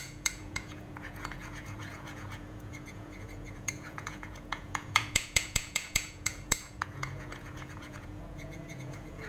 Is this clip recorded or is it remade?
remade